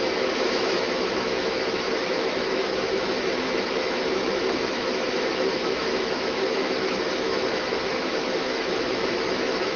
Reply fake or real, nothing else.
fake